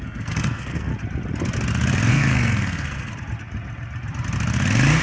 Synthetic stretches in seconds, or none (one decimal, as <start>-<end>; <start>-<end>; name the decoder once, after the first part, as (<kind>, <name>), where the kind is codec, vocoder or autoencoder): 0.0-0.9 (codec, SNAC); 2.1-3.1